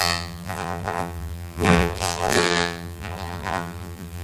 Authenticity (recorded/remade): remade